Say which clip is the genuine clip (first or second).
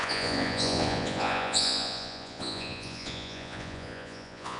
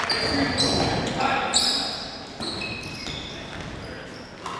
second